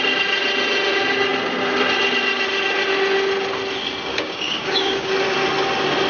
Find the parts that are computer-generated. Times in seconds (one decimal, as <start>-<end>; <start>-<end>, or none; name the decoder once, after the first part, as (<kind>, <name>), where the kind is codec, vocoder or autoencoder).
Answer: 4.1-5.1 (codec, DAC)